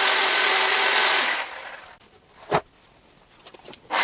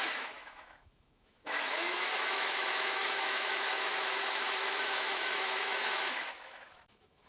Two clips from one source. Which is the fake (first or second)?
second